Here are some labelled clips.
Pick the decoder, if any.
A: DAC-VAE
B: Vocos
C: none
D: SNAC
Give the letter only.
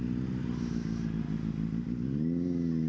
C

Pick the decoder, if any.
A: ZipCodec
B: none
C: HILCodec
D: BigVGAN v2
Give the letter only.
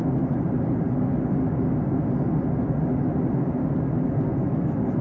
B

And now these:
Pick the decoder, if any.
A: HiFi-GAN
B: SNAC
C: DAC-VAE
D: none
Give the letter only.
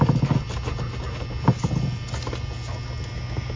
D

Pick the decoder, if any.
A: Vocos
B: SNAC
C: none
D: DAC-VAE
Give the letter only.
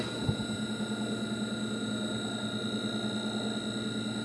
C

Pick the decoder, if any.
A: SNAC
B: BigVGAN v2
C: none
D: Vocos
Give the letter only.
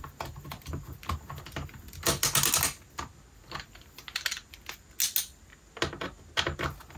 C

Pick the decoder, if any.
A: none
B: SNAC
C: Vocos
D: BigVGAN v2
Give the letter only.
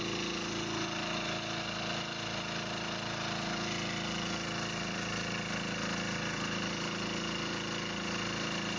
A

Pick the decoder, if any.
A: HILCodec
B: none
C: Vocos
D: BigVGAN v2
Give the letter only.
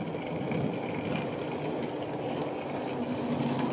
B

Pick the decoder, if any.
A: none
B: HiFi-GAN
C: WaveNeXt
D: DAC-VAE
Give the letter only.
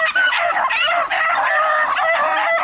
A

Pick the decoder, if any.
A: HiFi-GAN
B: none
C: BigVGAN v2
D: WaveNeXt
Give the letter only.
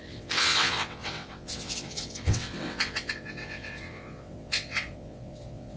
D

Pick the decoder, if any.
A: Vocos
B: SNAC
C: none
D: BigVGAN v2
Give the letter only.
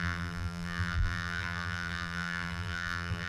D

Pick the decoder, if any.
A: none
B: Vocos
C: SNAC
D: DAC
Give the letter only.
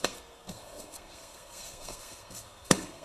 C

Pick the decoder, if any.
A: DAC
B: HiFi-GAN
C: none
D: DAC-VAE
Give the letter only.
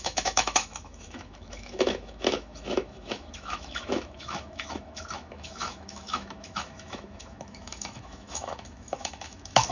D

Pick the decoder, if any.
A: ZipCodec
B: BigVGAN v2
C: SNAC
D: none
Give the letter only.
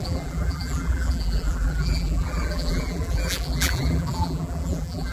B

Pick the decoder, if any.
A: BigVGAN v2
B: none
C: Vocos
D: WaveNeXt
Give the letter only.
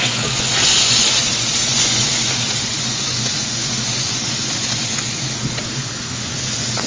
C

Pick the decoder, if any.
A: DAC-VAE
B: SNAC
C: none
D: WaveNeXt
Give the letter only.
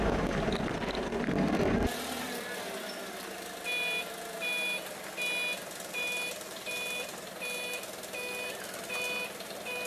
C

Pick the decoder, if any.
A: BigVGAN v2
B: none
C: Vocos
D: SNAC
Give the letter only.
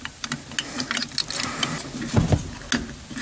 B